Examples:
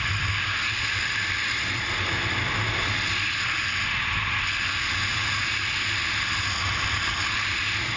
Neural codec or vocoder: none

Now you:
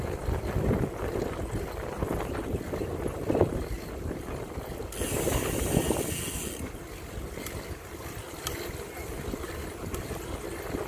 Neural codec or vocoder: none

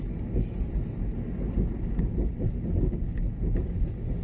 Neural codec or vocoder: none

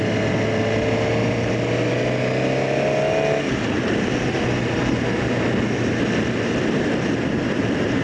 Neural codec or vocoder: none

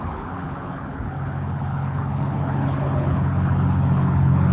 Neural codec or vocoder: codec, HILCodec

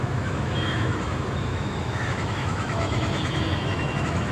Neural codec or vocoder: autoencoder, DAC-VAE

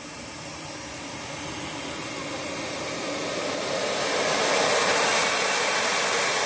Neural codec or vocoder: none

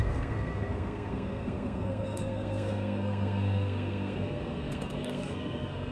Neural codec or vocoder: codec, SNAC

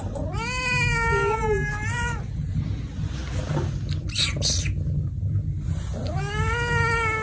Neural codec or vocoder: none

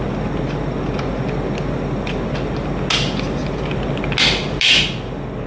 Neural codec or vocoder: none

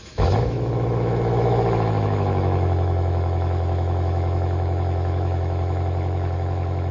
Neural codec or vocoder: autoencoder, DAC-VAE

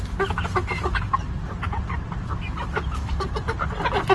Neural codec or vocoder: none